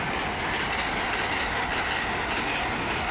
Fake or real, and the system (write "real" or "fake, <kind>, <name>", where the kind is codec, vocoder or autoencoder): real